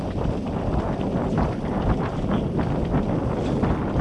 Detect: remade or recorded recorded